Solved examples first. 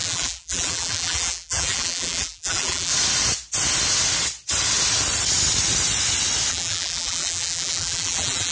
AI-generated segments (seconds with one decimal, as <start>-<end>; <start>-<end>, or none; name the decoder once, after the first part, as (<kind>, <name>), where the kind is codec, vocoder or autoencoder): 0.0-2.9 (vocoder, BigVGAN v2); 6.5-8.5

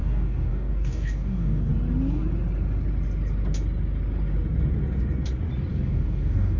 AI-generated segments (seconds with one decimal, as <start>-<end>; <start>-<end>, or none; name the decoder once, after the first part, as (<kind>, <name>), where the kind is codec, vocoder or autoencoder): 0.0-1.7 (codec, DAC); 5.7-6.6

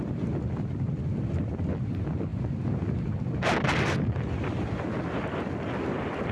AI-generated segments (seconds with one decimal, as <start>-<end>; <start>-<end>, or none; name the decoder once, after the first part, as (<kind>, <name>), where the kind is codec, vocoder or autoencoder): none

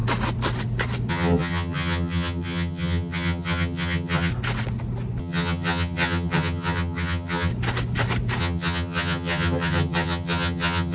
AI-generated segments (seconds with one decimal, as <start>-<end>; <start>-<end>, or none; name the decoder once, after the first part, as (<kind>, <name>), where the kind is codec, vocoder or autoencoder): 1.1-4.3 (vocoder, HiFi-GAN); 5.2-7.5; 8.4-10.9

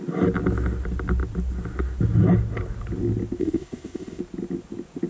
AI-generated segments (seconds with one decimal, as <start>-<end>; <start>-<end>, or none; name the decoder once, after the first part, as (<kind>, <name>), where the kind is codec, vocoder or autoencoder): 3.4-4.2 (codec, ZipCodec)

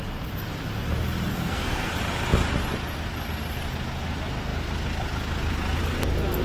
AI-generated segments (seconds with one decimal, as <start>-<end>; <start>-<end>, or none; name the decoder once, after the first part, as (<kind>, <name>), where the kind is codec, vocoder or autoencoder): 1.3-1.9 (codec, SNAC)

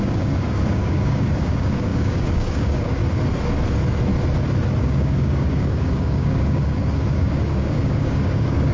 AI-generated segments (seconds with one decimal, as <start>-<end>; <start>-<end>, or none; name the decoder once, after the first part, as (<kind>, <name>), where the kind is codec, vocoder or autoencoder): 0.0-3.0 (codec, DAC); 4.8-8.7

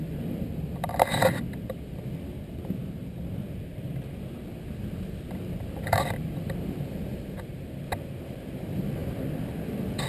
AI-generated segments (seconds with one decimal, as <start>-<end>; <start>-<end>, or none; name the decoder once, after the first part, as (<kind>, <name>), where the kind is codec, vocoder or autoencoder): 0.0-10.1 (vocoder, BigVGAN v2)